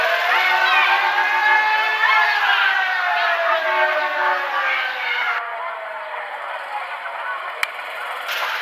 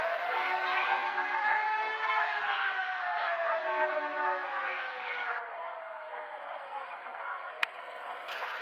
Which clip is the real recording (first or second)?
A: first